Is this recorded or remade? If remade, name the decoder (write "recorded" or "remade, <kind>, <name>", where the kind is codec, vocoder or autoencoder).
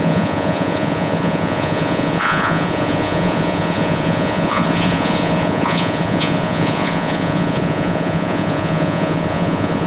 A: remade, vocoder, Vocos